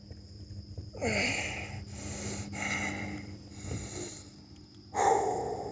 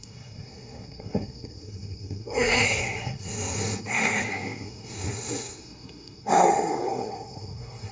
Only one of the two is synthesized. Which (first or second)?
second